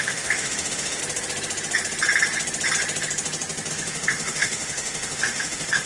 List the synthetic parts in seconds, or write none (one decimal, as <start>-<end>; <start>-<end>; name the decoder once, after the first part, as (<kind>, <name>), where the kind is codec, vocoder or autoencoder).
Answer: 0.0-1.0 (autoencoder, DAC-VAE); 3.7-5.9